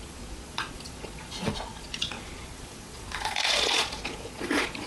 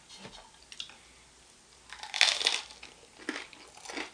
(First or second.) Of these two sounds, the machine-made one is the first